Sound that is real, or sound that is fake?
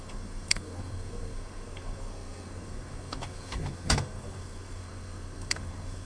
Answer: fake